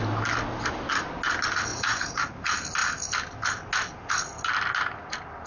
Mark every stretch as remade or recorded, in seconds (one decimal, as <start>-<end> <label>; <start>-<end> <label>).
0.0-1.7 recorded; 1.7-2.2 remade; 2.2-5.5 recorded

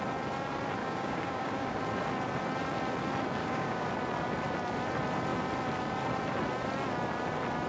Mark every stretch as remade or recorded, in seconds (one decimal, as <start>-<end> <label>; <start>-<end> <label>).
0.0-0.8 recorded; 0.8-1.8 remade; 1.8-3.4 recorded; 3.4-3.9 remade; 3.9-7.7 recorded

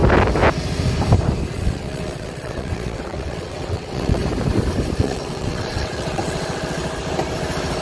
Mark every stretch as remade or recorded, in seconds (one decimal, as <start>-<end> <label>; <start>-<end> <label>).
0.0-1.5 recorded; 1.5-4.2 remade; 4.2-5.0 recorded; 5.0-6.8 remade; 6.8-7.8 recorded